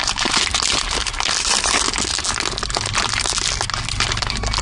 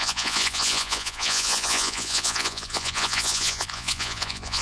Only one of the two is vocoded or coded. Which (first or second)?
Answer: second